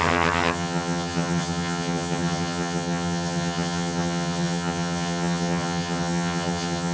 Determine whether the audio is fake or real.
fake